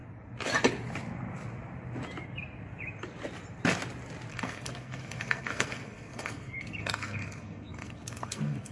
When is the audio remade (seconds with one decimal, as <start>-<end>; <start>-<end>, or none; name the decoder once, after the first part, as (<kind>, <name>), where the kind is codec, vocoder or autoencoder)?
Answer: 4.3-8.7 (codec, SNAC)